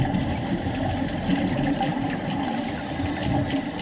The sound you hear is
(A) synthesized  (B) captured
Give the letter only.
B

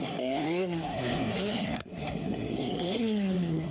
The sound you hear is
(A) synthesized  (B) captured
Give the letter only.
A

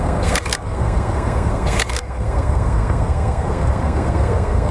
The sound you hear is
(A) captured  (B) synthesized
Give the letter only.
B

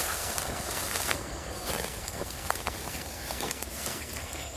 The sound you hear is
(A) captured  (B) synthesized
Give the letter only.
B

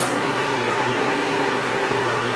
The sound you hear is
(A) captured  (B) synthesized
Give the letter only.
B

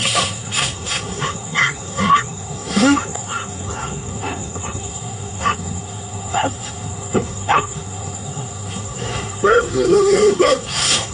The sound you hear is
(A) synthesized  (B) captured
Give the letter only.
A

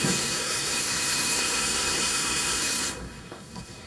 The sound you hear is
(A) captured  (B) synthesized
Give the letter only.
B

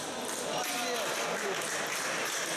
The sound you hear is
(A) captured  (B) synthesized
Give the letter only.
A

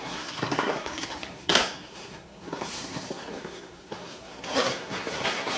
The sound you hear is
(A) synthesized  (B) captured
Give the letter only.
A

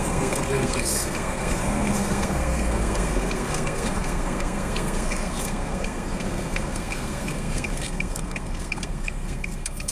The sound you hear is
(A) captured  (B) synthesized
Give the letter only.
B